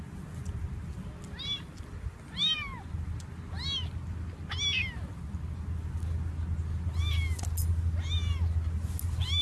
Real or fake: real